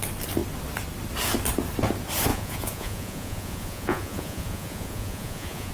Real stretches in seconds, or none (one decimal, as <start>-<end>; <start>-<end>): 0.0-2.3